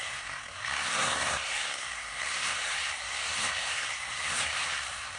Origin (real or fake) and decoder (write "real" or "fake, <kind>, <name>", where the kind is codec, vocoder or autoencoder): fake, codec, SNAC